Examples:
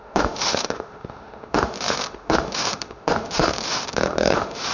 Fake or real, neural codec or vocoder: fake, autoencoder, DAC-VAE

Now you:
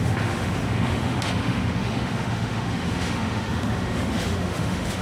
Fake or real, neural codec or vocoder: fake, autoencoder, DAC-VAE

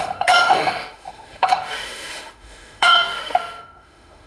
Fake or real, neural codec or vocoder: fake, autoencoder, DAC-VAE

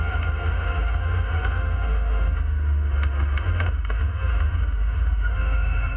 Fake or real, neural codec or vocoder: fake, autoencoder, DAC-VAE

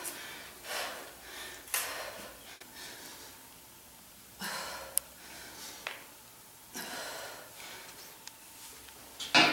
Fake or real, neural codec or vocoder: real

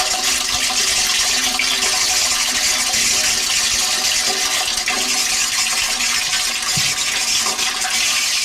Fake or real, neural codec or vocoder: real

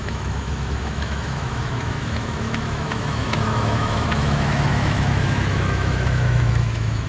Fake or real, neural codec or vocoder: fake, autoencoder, DAC-VAE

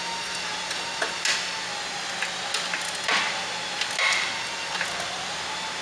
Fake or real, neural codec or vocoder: real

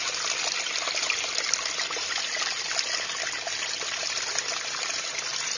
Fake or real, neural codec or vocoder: real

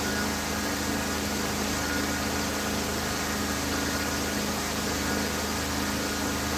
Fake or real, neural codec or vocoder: real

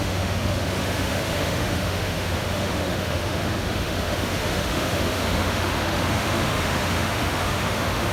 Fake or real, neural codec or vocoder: fake, autoencoder, DAC-VAE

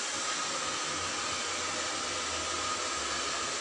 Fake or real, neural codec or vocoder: real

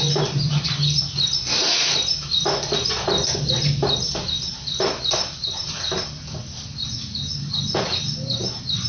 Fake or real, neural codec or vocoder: real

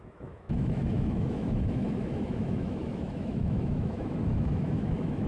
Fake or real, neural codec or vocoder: fake, autoencoder, DAC-VAE